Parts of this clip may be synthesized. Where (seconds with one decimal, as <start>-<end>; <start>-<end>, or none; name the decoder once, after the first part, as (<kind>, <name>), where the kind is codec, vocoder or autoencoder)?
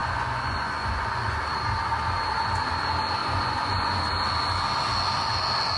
0.0-1.4 (vocoder, Vocos); 3.2-4.0